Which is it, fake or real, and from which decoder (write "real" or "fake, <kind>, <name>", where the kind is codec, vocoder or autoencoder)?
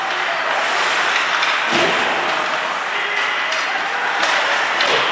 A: real